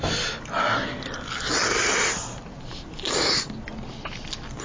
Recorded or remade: recorded